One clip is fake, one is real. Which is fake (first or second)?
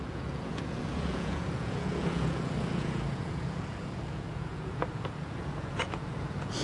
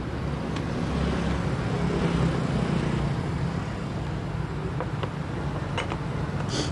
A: first